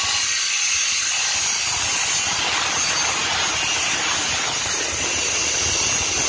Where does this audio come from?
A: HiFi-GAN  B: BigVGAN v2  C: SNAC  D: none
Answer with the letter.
D